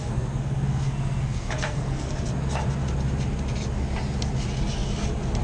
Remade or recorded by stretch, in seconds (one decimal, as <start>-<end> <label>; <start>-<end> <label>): 0.0-2.3 remade; 2.3-5.4 recorded